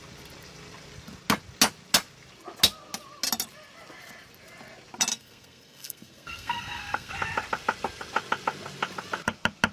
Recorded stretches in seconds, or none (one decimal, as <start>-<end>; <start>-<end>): 0.0-5.1; 7.1-9.7